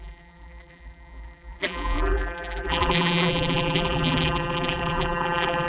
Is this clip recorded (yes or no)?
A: no